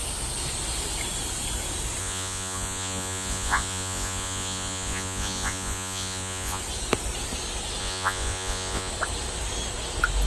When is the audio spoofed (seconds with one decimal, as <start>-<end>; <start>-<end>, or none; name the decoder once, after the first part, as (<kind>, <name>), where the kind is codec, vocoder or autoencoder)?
2.0-6.6 (vocoder, Vocos); 7.8-8.9